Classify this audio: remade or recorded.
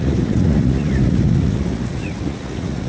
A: remade